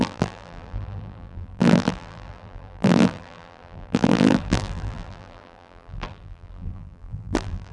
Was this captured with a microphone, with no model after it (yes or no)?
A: no